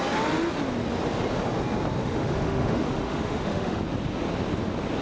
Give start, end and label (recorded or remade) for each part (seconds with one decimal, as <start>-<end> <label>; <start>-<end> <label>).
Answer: 0.0-2.0 recorded; 2.0-3.8 remade; 3.8-5.0 recorded